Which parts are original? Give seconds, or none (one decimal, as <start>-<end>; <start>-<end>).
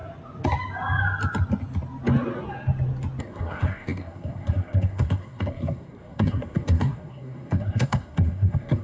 0.0-3.2